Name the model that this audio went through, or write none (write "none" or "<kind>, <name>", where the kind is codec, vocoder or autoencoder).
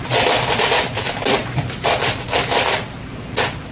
none